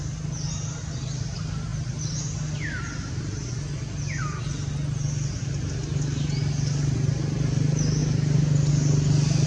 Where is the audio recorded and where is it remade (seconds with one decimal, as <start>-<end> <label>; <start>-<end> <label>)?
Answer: 0.0-9.5 recorded